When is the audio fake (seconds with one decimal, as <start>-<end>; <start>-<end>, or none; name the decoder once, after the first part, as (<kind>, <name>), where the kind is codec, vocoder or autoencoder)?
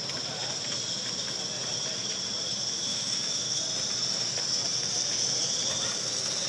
2.9-3.6 (autoencoder, DAC-VAE)